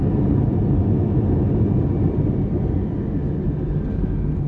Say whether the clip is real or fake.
real